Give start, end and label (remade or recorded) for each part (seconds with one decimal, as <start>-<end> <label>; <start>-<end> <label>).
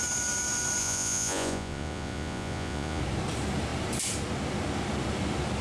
0.0-0.8 recorded; 0.8-3.0 remade; 3.0-5.6 recorded